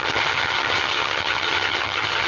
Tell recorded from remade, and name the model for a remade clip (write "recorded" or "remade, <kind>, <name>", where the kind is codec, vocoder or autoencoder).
remade, vocoder, HiFi-GAN